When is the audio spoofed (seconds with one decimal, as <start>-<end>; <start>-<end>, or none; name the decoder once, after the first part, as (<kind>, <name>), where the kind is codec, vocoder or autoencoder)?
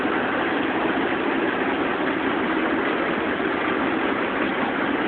none